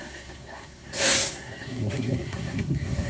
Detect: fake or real fake